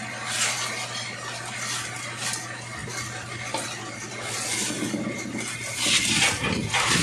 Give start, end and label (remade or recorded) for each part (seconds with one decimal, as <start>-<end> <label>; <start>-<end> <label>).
0.0-7.0 recorded